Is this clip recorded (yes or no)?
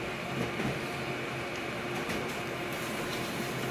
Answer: no